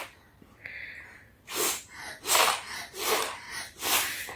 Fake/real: real